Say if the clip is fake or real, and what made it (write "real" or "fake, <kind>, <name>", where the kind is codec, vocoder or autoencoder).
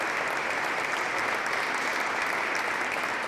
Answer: real